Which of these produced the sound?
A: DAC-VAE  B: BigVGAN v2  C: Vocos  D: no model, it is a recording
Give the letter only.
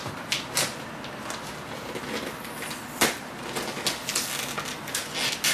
D